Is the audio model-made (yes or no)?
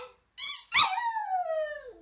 no